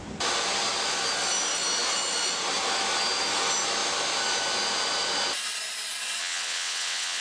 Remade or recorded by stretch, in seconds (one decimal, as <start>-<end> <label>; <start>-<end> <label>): 0.0-6.2 recorded; 6.2-7.2 remade